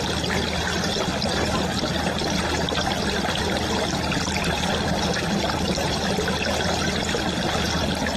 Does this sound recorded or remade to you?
recorded